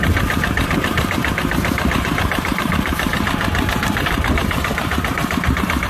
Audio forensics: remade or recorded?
remade